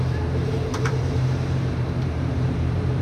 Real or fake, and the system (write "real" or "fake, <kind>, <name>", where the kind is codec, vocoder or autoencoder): fake, vocoder, BigVGAN v2